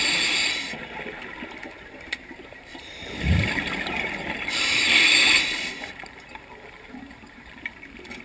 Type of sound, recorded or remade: recorded